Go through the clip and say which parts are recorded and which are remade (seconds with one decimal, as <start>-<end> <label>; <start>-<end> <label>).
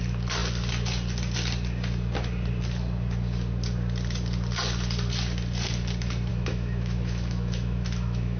0.0-6.3 recorded; 6.3-8.4 remade